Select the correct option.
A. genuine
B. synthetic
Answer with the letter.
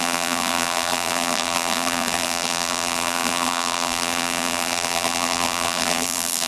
B